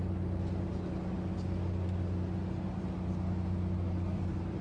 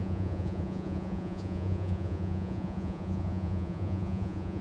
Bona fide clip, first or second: first